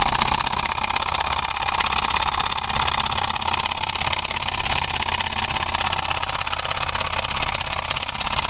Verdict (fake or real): real